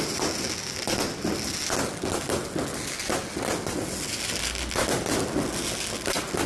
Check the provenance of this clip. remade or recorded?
recorded